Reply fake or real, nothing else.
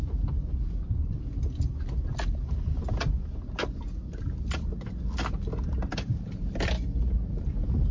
real